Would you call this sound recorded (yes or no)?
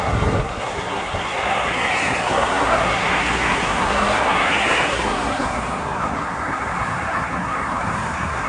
no